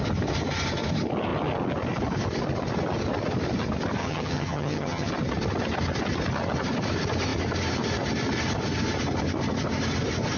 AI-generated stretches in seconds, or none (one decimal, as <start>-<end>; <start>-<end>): 4.0-5.1